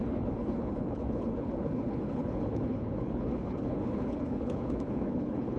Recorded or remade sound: remade